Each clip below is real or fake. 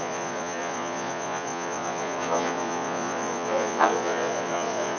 fake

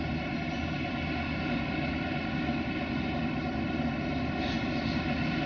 real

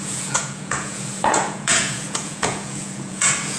fake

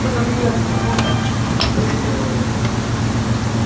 real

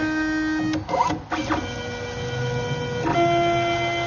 real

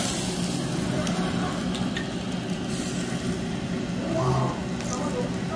real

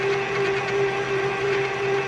real